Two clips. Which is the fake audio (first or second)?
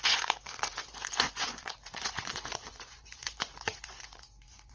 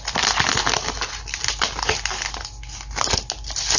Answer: first